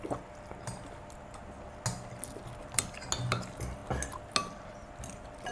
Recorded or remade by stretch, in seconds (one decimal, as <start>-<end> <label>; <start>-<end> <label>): 0.0-5.5 recorded